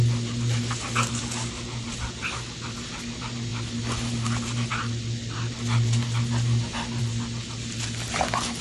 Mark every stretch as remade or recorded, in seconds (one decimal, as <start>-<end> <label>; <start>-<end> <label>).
0.0-8.6 recorded